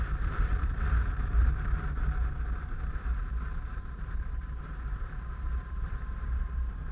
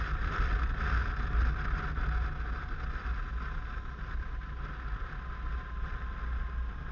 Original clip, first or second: second